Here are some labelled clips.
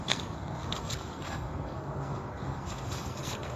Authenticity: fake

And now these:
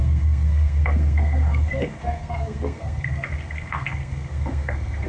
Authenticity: fake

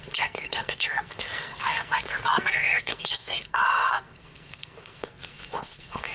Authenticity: fake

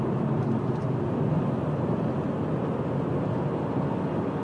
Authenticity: real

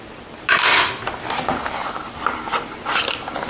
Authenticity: real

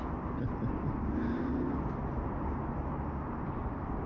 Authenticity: real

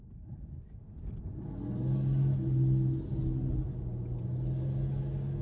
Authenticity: real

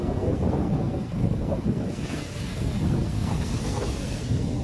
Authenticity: fake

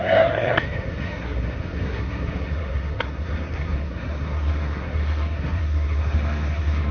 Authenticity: fake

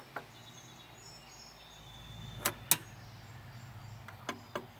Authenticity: real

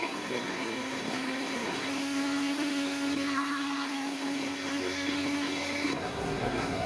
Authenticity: fake